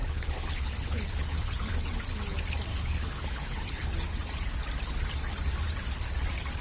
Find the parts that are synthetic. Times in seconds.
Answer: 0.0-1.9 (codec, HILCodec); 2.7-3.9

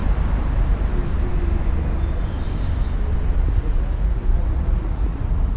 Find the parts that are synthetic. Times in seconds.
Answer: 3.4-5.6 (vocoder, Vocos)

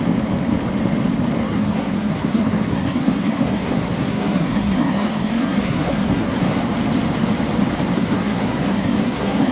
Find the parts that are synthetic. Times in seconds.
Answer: 1.4-6.6 (codec, SNAC); 7.9-9.5

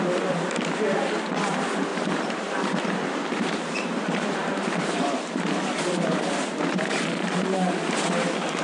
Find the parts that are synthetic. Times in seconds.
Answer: 1.9-6.6 (vocoder, BigVGAN v2)

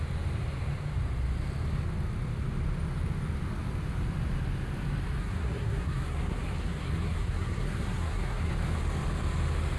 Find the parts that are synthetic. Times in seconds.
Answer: 5.2-8.5 (codec, SNAC)

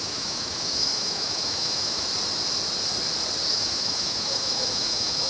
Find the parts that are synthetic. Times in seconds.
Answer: 0.0-2.1 (autoencoder, DAC-VAE); 3.5-5.3

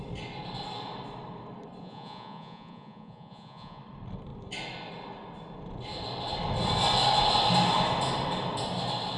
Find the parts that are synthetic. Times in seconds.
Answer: 1.8-3.8 (vocoder, Vocos)

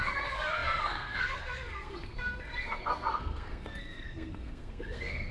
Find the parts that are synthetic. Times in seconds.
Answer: 0.0-5.3 (codec, SNAC)